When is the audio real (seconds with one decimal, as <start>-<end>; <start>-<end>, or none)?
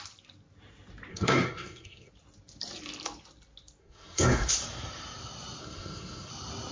0.0-1.1; 2.1-3.8; 4.5-5.6; 6.3-6.7